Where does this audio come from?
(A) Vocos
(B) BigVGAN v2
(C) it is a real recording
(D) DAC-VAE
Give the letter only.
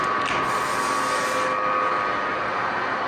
C